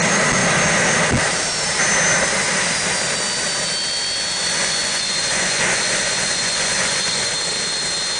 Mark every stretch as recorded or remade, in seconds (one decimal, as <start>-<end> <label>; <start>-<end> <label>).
0.0-4.4 recorded; 4.4-7.3 remade; 7.3-8.2 recorded